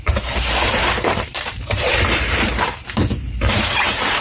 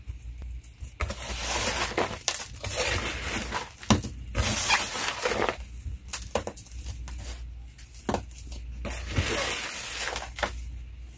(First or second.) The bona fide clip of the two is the second